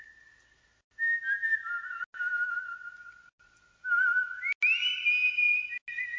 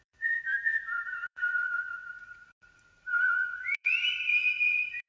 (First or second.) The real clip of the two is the first